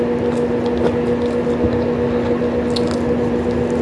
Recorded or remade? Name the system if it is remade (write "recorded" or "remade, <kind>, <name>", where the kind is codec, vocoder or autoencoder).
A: recorded